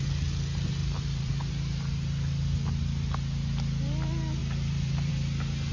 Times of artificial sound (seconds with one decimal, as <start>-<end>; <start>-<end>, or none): 0.8-1.5; 4.4-5.1